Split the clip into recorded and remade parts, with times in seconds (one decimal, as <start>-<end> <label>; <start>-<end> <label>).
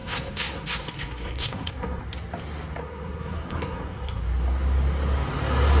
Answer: 0.0-2.0 remade; 2.0-2.8 recorded; 2.8-4.2 remade; 4.2-5.8 recorded